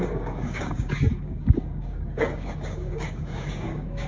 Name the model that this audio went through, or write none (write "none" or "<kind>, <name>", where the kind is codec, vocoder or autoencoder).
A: codec, DAC